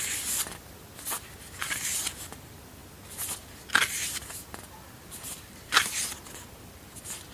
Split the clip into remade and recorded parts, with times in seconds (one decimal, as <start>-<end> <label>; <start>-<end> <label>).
0.0-7.3 recorded